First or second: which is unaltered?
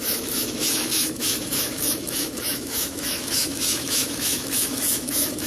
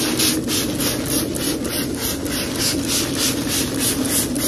second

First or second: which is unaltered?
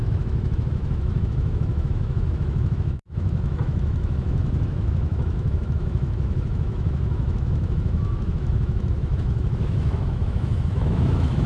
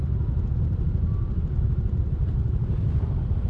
second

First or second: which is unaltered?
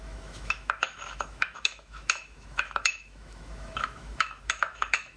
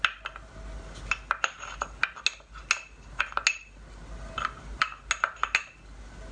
second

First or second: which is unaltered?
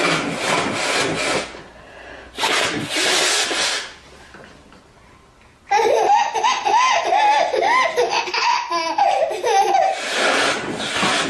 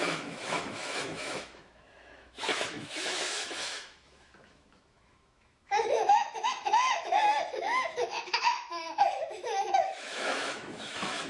first